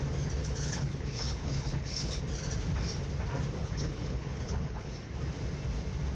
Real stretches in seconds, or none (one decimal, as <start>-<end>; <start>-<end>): 0.0-0.4; 2.2-3.6; 4.9-6.1

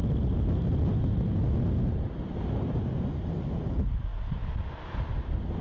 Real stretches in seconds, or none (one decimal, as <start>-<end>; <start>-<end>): 0.0-5.6

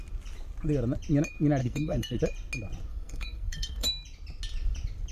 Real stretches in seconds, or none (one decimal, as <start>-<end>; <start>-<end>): 0.0-1.6; 2.2-2.9; 3.9-5.1

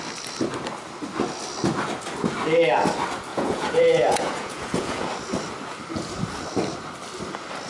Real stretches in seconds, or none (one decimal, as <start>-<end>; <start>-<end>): 0.0-3.3; 5.1-7.7